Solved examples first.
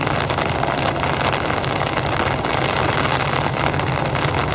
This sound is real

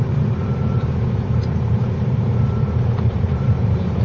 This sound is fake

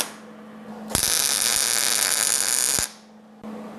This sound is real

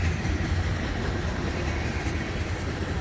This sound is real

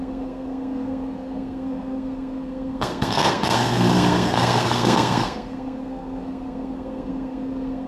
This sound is fake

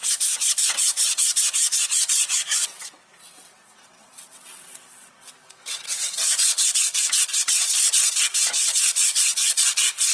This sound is fake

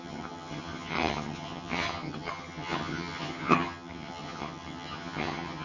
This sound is fake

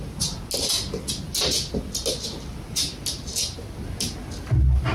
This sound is real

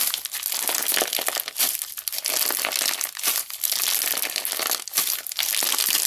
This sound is real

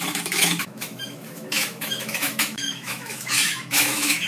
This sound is fake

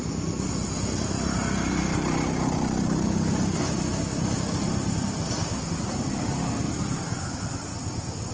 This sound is real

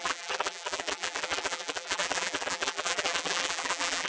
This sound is fake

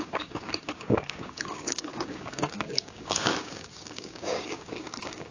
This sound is fake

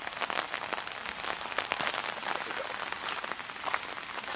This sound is real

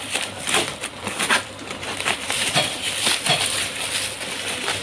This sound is fake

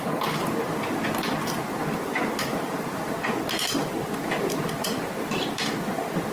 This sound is real